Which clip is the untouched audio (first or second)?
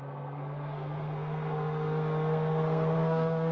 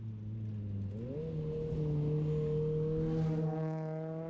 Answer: second